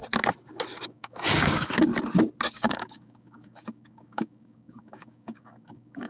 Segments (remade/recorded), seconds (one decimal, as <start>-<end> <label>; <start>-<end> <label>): 0.0-0.8 recorded; 0.8-1.9 remade; 1.9-2.5 recorded; 2.5-6.1 remade